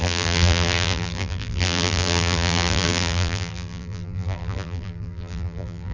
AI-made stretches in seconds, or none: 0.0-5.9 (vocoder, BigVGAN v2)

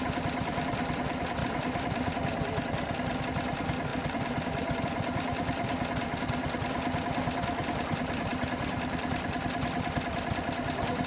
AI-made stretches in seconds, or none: 1.4-3.2 (vocoder, BigVGAN v2); 3.9-4.8

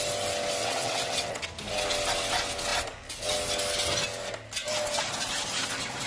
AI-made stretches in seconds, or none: 0.6-1.4 (vocoder, WaveNeXt)

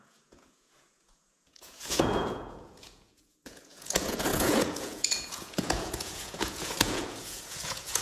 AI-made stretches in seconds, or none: 0.0-8.0 (vocoder, Vocos)